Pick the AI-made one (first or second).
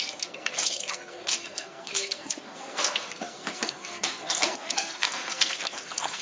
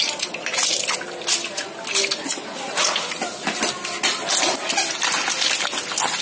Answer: first